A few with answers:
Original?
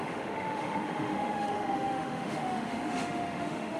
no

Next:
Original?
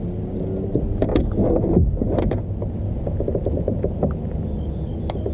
yes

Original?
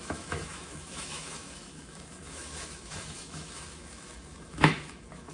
no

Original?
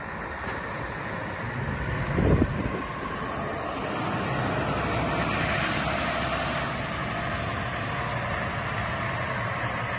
yes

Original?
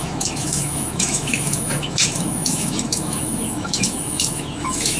no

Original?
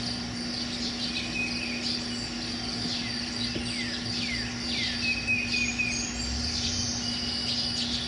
yes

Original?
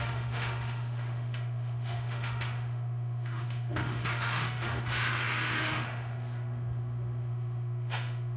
no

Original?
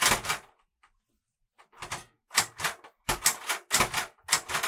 yes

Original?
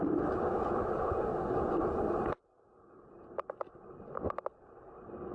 yes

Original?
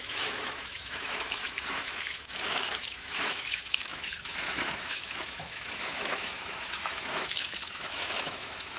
no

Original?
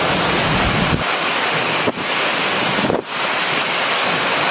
yes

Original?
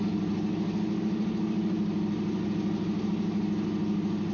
yes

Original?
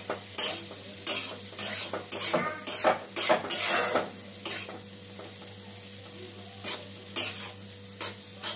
yes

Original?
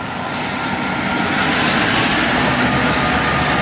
yes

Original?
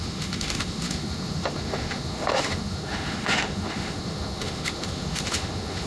no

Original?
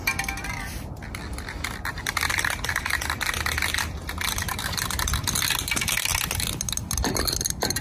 yes